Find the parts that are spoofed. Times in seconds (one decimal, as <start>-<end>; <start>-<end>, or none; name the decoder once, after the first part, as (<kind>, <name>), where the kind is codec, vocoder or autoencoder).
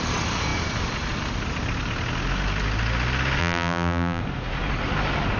3.4-4.2 (vocoder, BigVGAN v2)